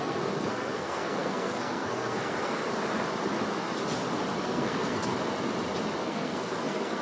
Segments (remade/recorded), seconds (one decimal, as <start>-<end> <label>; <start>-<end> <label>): 0.0-2.7 remade; 2.7-4.4 recorded; 4.4-5.1 remade; 5.1-6.0 recorded; 6.0-7.0 remade